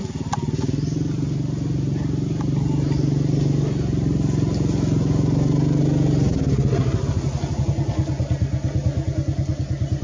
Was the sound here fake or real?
real